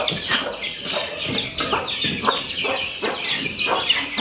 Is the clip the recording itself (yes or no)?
yes